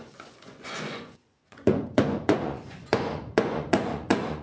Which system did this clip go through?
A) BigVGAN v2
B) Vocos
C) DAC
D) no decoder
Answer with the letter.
B